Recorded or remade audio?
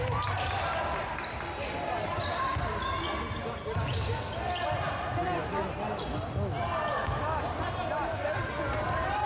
recorded